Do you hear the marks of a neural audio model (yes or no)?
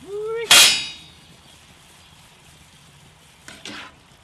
no